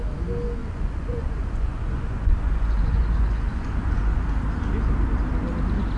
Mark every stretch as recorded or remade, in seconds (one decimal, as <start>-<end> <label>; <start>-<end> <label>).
0.0-0.6 recorded; 0.6-4.2 remade; 4.2-6.0 recorded